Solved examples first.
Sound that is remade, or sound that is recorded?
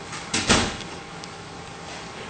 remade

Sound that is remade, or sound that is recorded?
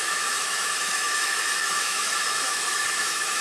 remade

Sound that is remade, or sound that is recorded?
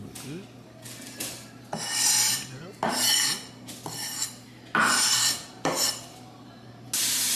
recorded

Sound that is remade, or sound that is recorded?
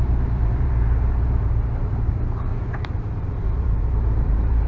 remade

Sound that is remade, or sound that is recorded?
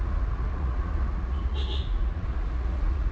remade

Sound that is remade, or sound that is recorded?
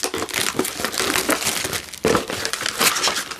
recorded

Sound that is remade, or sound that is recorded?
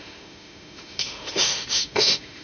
remade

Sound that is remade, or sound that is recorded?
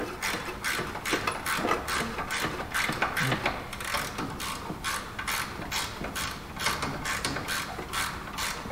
recorded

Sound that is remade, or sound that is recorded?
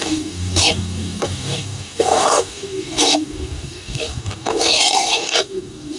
remade